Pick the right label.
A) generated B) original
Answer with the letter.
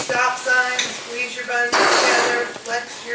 B